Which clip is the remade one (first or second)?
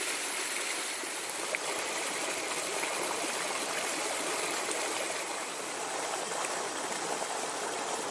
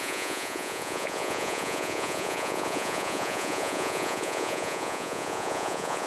second